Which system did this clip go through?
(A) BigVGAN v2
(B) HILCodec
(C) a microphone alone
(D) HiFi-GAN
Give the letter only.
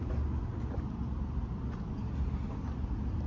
C